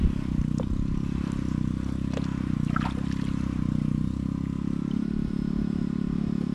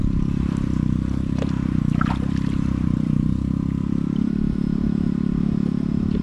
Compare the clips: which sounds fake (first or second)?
second